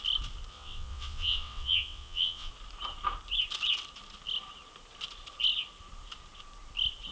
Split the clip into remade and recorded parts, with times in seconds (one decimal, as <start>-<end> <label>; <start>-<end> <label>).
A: 0.0-0.5 recorded; 0.5-2.5 remade; 2.5-7.1 recorded